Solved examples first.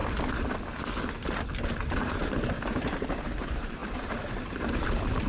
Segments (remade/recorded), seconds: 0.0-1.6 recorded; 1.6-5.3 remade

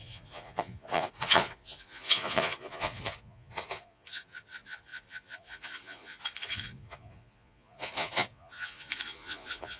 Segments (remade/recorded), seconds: 0.0-9.8 remade

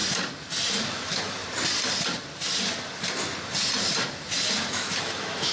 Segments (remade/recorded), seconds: 0.0-0.9 recorded; 0.9-1.4 remade; 1.4-4.7 recorded; 4.7-5.5 remade

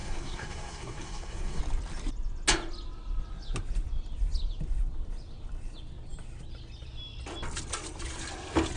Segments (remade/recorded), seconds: 0.0-1.6 remade; 1.6-8.8 recorded